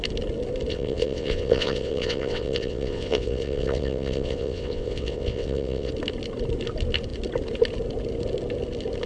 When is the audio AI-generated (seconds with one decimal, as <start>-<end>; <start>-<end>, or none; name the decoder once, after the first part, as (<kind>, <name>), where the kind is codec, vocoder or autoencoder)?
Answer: 0.7-5.9 (vocoder, WaveNeXt)